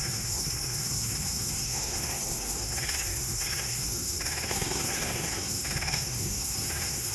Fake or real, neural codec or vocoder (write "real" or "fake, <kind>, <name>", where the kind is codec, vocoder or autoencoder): fake, codec, SNAC